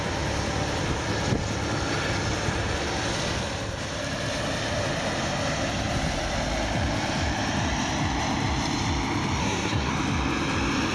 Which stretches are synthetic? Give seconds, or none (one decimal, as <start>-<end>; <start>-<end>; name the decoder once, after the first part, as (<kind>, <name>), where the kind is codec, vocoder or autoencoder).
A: 9.4-9.9 (codec, SNAC)